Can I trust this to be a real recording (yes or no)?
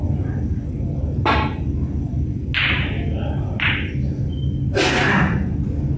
yes